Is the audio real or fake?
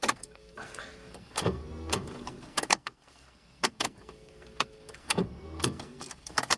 fake